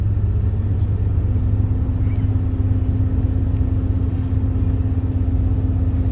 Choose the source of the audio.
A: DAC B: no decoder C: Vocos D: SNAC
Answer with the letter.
B